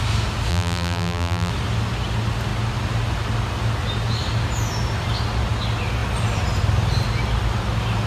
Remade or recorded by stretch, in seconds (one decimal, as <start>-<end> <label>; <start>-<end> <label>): 0.0-0.5 recorded; 0.5-1.5 remade; 1.5-8.1 recorded